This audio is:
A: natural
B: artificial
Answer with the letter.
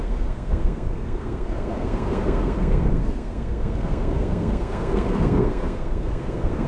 B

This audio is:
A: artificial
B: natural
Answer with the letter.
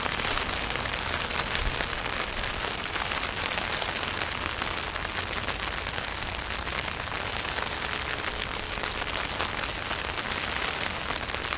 B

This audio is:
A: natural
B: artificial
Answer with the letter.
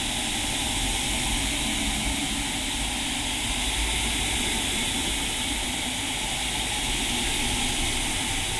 A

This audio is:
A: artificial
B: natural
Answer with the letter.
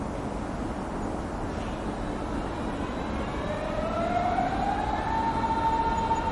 B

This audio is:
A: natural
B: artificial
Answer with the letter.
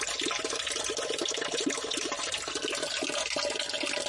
A